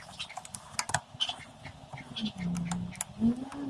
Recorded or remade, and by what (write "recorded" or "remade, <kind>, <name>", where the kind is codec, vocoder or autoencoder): recorded